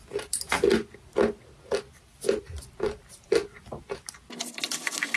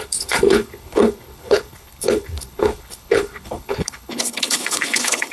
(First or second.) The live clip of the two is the first